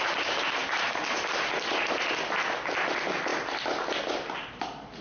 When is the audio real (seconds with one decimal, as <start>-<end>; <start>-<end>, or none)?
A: 0.0-5.0

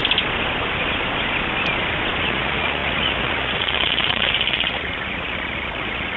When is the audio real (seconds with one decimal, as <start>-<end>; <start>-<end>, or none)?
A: 0.0-2.2

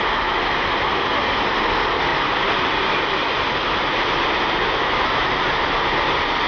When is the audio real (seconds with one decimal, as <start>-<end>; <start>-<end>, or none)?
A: 0.0-6.5